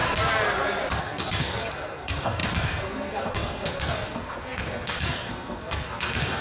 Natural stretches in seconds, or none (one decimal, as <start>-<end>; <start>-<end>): 0.0-1.0